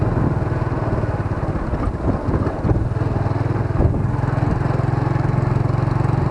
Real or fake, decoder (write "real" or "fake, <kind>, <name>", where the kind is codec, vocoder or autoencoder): real